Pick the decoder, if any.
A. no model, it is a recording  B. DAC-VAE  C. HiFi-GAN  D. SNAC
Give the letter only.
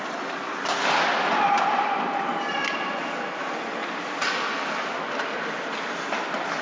A